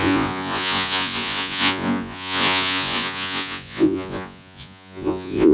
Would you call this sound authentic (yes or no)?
no